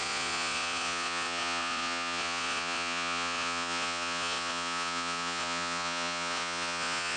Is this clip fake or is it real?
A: fake